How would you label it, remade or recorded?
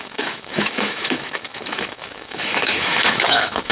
remade